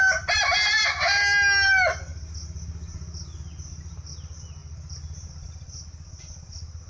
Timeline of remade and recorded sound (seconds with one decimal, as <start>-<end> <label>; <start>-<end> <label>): 0.0-6.9 recorded

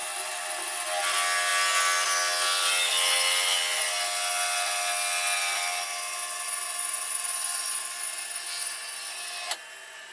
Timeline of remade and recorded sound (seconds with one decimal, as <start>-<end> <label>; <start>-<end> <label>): 0.0-10.1 recorded